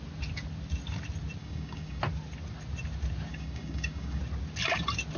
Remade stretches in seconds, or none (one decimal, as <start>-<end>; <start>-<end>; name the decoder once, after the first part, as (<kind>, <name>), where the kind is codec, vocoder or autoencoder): 1.4-2.0 (codec, DAC); 3.3-4.2